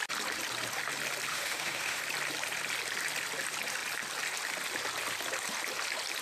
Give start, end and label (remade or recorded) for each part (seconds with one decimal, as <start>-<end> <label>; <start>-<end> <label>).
0.0-1.3 recorded; 1.3-2.0 remade; 2.0-6.2 recorded